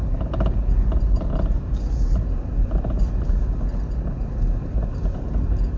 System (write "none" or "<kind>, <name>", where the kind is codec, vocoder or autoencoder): none